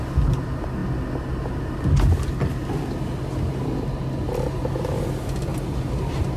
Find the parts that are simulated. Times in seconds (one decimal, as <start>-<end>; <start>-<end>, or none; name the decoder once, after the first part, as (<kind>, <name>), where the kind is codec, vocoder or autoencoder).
5.5-6.4 (vocoder, BigVGAN v2)